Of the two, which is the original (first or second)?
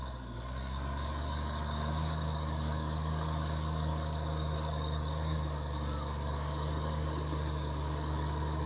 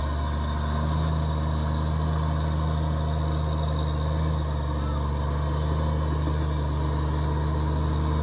second